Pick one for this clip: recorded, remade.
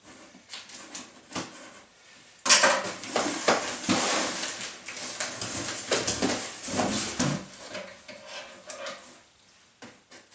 recorded